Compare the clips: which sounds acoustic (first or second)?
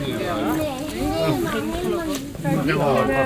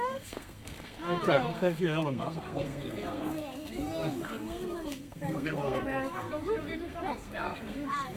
first